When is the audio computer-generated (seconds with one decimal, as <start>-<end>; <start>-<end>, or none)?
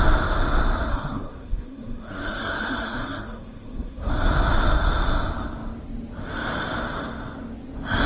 0.9-4.1